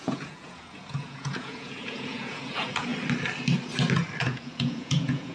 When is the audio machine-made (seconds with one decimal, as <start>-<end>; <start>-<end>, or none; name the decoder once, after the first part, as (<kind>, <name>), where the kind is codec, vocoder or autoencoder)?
0.0-2.9 (vocoder, Vocos); 4.2-5.3